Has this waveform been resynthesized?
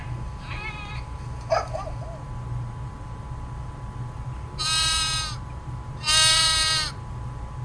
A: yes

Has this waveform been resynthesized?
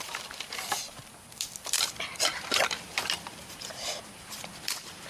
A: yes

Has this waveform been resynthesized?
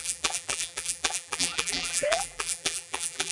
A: yes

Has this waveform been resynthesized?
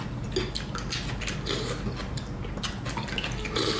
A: no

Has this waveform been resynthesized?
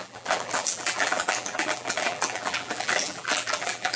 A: yes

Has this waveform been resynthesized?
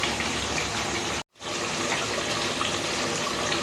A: no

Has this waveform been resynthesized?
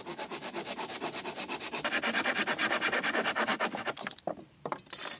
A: no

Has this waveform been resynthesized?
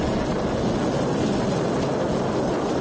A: no